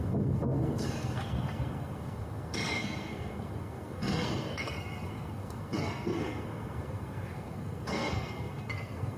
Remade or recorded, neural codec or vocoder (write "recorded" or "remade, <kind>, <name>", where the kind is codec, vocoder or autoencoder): remade, codec, SNAC